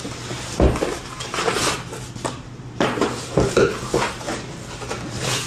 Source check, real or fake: real